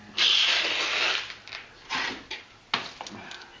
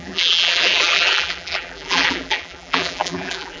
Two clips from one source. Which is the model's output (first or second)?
second